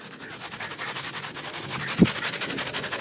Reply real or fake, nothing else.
real